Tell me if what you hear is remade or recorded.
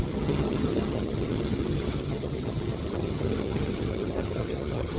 remade